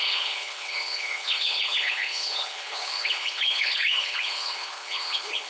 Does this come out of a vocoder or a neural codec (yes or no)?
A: yes